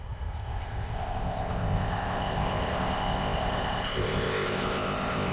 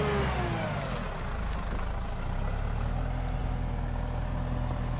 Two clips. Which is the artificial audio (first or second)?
first